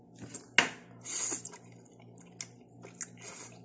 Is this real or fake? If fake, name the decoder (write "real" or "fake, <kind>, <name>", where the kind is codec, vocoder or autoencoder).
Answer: real